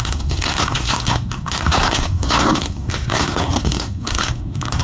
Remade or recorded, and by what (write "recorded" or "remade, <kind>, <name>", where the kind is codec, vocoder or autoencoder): remade, codec, SNAC